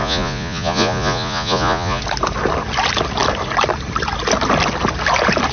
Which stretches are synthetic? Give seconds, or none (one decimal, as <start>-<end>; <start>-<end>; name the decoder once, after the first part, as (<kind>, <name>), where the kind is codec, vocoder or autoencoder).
0.0-2.0 (vocoder, Vocos)